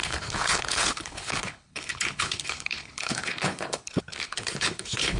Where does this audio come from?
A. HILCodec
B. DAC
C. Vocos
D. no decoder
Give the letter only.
A